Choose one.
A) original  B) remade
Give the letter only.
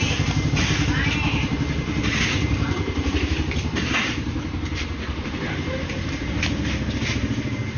B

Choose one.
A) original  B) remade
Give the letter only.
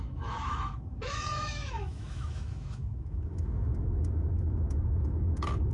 B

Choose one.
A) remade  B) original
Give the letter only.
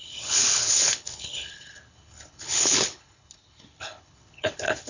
A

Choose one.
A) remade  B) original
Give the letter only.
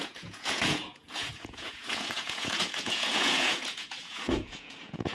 A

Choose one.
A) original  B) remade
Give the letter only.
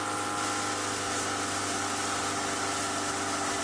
A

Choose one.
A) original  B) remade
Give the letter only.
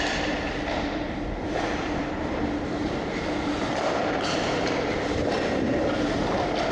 B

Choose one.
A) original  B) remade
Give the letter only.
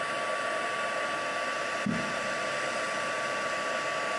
A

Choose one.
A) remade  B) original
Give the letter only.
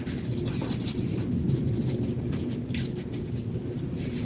B